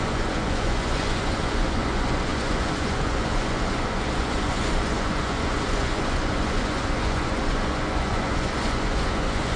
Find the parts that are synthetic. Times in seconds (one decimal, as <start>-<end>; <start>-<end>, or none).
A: 0.0-9.6